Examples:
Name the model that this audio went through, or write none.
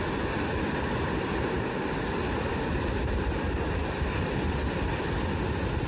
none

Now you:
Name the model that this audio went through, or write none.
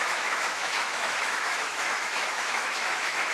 autoencoder, DAC-VAE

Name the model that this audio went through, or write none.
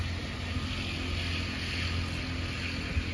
none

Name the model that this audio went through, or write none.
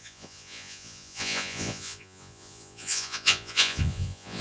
vocoder, Vocos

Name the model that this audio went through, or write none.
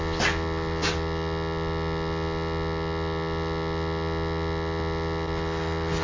none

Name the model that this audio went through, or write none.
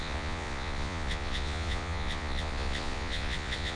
vocoder, Vocos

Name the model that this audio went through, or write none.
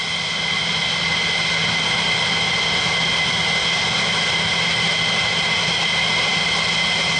none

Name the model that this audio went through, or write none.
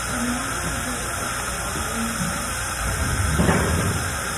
none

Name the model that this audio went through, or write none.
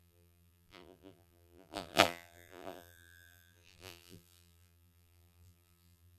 vocoder, BigVGAN v2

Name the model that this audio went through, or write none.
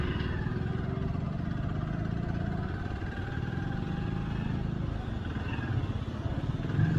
none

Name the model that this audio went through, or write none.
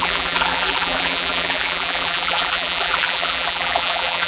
vocoder, BigVGAN v2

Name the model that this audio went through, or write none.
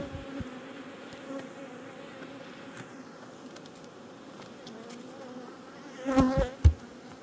none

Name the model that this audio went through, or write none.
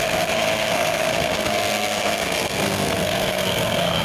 codec, SNAC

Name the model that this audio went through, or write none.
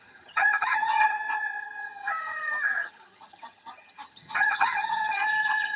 vocoder, HiFi-GAN